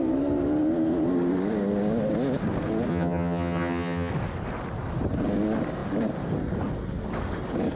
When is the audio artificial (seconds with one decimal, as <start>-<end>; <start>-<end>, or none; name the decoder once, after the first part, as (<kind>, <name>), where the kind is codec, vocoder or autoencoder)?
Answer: 2.9-4.1 (vocoder, HiFi-GAN)